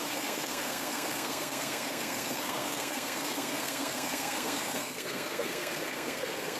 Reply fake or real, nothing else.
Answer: fake